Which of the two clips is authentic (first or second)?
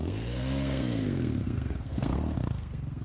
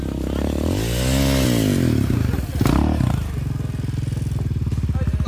second